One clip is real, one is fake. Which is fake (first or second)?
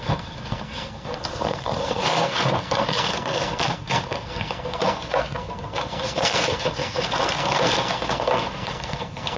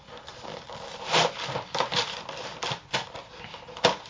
first